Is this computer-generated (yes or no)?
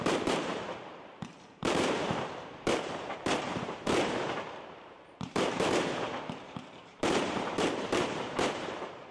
yes